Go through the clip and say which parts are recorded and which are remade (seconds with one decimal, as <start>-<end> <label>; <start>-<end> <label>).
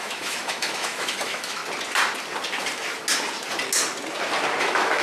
0.0-1.6 remade; 1.6-4.6 recorded; 4.6-5.0 remade